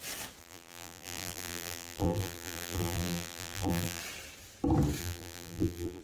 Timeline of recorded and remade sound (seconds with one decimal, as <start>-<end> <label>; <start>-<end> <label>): 0.0-0.4 recorded; 0.4-4.0 remade; 4.0-5.0 recorded; 5.0-6.0 remade